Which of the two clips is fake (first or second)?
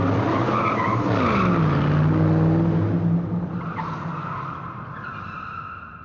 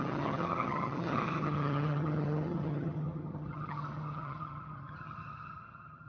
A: second